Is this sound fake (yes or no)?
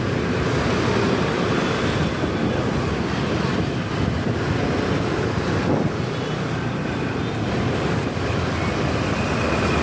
no